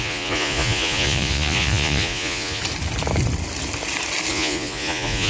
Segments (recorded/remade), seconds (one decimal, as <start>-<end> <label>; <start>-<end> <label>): 0.0-2.6 remade; 2.6-4.3 recorded; 4.3-5.3 remade